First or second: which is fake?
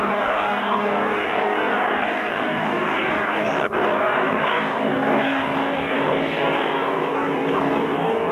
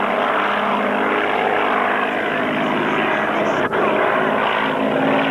first